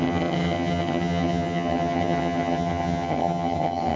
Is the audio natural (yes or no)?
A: no